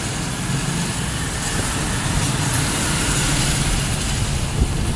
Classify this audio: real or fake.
real